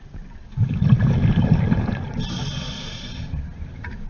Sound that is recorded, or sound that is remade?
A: recorded